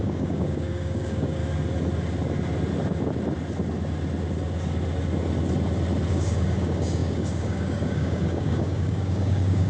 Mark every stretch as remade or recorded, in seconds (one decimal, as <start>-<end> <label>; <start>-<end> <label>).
0.0-1.4 remade; 1.4-6.1 recorded; 6.1-9.7 remade